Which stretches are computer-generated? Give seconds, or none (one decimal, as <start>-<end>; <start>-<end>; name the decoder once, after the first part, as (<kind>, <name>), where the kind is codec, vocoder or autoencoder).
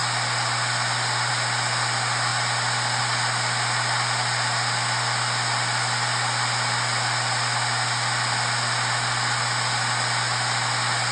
none